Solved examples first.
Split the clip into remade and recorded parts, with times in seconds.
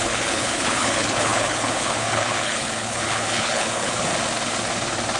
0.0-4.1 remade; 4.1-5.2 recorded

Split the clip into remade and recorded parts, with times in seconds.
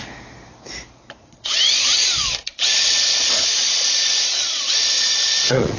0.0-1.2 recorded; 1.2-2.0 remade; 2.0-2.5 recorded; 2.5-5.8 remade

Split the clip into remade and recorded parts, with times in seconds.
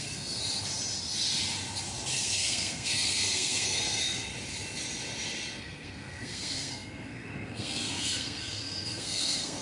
0.0-0.4 remade; 0.4-2.1 recorded; 2.1-4.3 remade; 4.3-5.6 recorded; 5.6-9.6 remade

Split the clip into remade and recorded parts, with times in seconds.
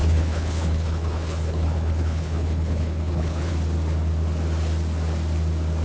0.0-3.5 remade; 3.5-5.8 recorded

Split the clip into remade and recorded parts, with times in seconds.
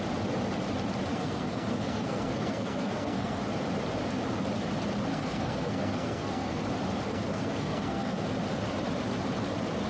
0.0-1.1 recorded; 1.1-3.4 remade; 3.4-5.1 recorded; 5.1-6.6 remade; 6.6-7.1 recorded; 7.1-8.3 remade; 8.3-9.9 recorded